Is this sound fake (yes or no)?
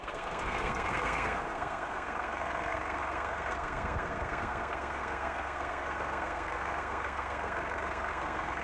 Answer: yes